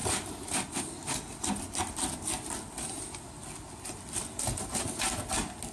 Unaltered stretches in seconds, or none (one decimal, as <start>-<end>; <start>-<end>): 0.0-5.7